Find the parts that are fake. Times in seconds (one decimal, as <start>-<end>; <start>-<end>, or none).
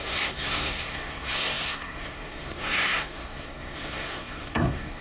0.0-5.0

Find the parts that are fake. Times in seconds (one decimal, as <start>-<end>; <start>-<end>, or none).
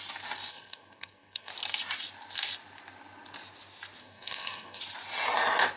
0.5-1.5; 4.0-4.8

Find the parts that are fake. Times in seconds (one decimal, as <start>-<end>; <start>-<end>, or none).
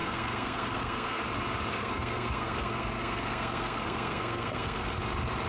0.0-1.2; 1.7-5.0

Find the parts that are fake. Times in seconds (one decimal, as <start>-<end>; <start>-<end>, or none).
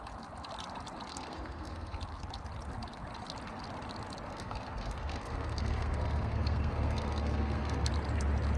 1.1-2.0; 4.3-7.9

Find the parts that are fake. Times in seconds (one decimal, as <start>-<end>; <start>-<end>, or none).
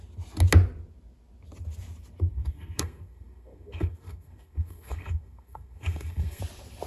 2.3-6.4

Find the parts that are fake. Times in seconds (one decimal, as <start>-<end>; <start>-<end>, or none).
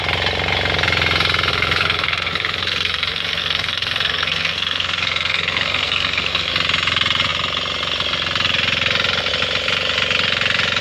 1.5-6.5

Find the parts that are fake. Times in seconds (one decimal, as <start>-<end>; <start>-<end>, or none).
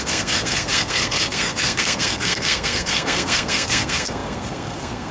0.0-5.1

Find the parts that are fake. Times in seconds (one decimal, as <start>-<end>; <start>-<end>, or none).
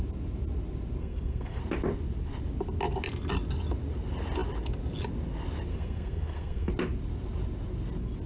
1.0-1.6; 5.7-6.7